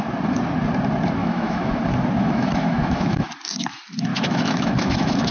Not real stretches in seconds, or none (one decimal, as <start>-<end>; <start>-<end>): 1.2-1.8; 2.2-3.3; 4.1-5.3